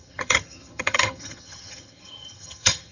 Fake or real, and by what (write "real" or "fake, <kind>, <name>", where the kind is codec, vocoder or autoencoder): fake, vocoder, HiFi-GAN